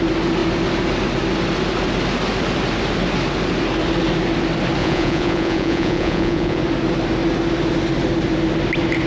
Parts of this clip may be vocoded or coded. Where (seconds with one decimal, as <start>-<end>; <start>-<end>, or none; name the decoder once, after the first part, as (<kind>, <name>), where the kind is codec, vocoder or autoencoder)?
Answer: 4.8-6.6 (vocoder, Vocos)